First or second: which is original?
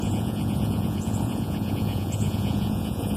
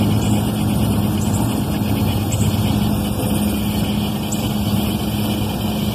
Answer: second